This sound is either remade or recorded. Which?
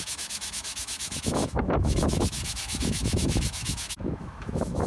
remade